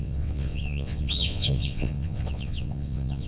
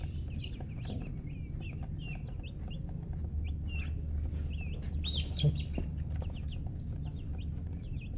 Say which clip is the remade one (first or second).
first